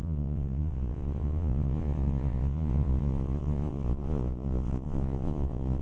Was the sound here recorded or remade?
remade